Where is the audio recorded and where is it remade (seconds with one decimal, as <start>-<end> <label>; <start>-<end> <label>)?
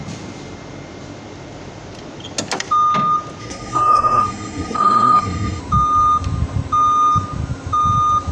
0.0-3.4 recorded; 3.4-5.6 remade; 5.6-8.3 recorded